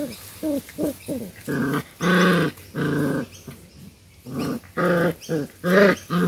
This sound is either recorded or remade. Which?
recorded